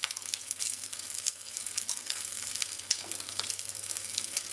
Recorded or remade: remade